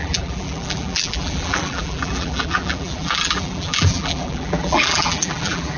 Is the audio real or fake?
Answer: fake